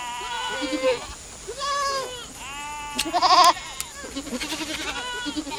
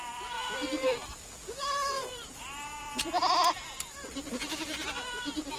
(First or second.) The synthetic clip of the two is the second